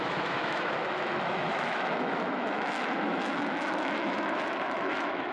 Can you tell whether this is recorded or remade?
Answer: remade